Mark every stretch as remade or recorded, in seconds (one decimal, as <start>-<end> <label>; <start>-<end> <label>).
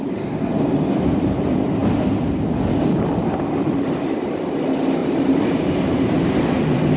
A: 0.0-1.8 recorded; 1.8-4.0 remade; 4.0-5.0 recorded; 5.0-5.5 remade; 5.5-5.9 recorded; 5.9-7.0 remade